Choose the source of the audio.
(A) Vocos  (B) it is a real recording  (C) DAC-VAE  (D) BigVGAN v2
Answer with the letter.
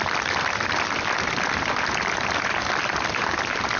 D